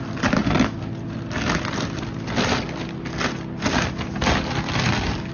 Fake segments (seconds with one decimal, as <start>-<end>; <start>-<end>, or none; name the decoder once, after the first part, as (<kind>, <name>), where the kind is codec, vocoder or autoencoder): none